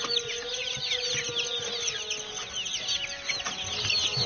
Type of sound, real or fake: real